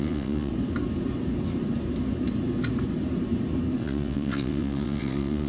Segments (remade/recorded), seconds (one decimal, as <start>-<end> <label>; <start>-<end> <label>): 0.0-0.5 remade; 0.5-3.8 recorded; 3.8-5.5 remade